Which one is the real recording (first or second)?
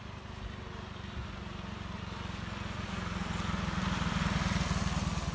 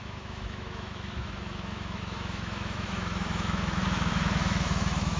first